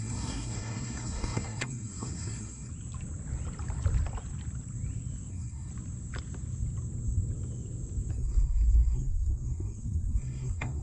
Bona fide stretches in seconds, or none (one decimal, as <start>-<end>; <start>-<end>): 2.7-5.3; 5.7-8.1